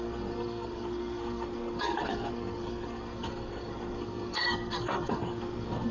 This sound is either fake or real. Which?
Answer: fake